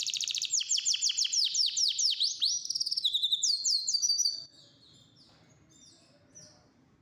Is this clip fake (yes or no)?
no